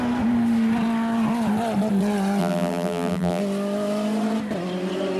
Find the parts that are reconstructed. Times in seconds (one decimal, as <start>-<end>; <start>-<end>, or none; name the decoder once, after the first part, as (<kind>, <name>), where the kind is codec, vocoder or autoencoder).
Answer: 2.4-3.4 (vocoder, BigVGAN v2)